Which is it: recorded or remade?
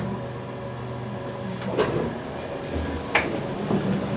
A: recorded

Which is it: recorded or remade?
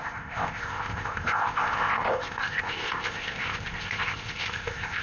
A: remade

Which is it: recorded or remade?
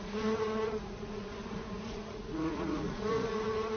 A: remade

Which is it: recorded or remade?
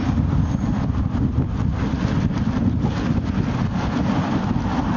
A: recorded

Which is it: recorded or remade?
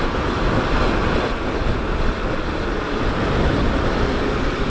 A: recorded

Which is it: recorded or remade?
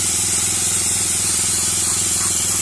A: recorded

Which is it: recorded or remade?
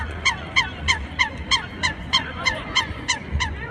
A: remade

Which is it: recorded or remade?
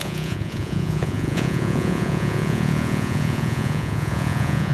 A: remade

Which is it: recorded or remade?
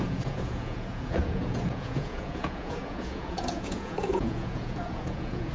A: remade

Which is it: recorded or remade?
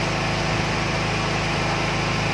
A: recorded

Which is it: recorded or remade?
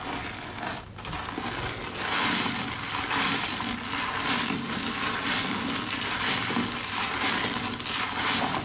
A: recorded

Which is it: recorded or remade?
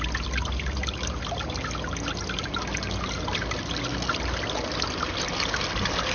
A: recorded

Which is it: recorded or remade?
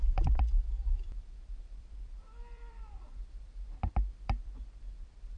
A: remade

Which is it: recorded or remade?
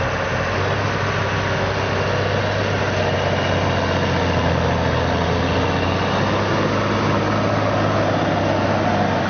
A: recorded